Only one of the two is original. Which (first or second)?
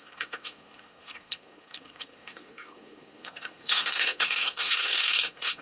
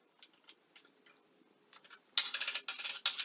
second